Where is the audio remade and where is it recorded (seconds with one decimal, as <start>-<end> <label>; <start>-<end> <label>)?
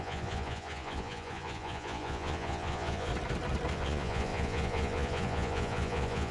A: 0.0-3.1 remade; 3.1-3.7 recorded; 3.7-6.3 remade